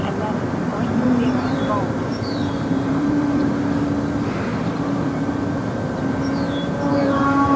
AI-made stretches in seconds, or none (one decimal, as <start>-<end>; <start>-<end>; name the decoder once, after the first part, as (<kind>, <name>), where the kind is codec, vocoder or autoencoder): 0.7-3.7 (vocoder, BigVGAN v2); 4.5-6.0; 6.9-7.6